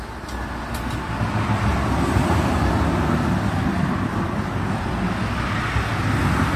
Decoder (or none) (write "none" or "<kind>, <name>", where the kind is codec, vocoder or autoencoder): none